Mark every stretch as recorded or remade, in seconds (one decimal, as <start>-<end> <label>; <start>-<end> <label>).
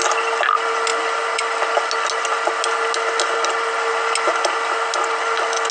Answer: 0.0-5.7 recorded